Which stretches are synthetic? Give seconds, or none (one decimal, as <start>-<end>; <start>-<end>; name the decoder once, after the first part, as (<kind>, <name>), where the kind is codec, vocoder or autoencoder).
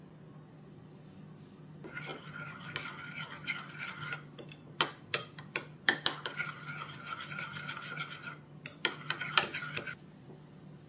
2.1-2.7 (vocoder, BigVGAN v2)